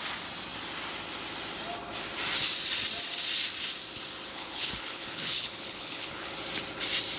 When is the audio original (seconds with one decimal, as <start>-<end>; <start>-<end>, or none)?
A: 0.0-4.3; 6.3-7.2